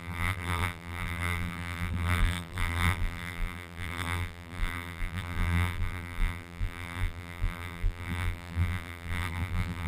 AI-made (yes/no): yes